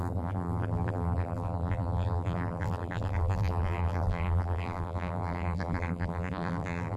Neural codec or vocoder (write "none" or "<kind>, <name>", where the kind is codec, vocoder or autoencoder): vocoder, BigVGAN v2